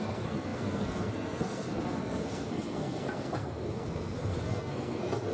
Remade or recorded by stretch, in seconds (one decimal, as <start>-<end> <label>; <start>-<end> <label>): 0.0-5.3 remade